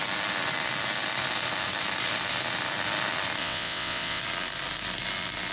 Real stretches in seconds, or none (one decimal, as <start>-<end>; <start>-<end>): 0.0-3.4; 4.2-5.5